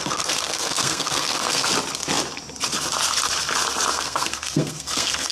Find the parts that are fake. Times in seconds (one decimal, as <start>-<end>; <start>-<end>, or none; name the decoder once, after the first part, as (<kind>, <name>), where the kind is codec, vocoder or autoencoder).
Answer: 0.0-1.7 (codec, SNAC); 3.9-5.3